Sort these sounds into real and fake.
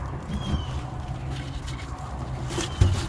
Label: real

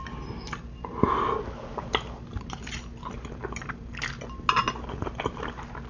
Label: real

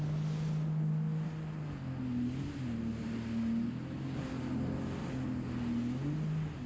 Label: real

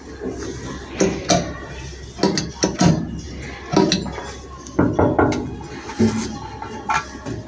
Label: real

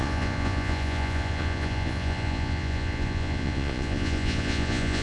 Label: fake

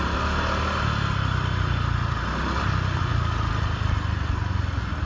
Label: real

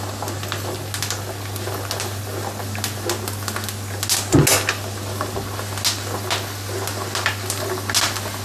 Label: real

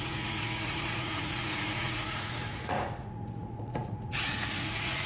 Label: fake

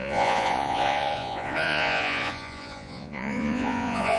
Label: fake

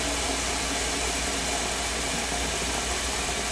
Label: real